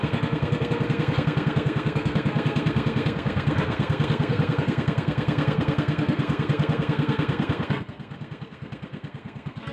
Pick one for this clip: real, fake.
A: fake